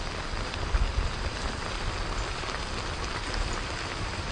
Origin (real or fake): real